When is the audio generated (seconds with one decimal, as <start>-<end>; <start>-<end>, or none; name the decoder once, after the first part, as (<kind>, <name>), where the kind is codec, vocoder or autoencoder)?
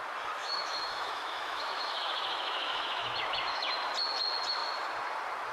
0.4-3.7 (autoencoder, DAC-VAE)